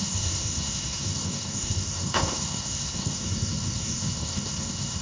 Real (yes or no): no